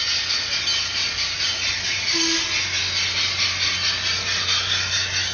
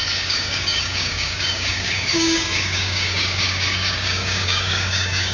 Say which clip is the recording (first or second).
first